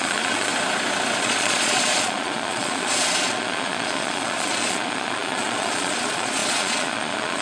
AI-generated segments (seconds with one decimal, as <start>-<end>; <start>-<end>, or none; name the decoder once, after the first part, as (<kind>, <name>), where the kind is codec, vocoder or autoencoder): 0.0-0.5 (vocoder, Vocos); 1.2-7.4